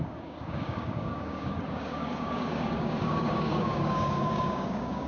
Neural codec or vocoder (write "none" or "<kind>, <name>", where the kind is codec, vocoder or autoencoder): codec, DAC